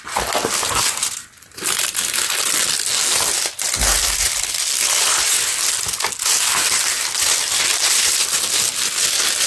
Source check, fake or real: real